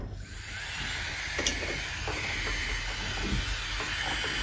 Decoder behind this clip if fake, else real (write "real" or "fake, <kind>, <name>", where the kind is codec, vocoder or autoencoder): real